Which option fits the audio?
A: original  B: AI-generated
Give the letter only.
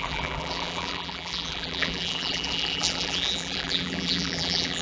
B